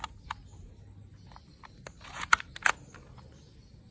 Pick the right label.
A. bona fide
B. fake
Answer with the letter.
A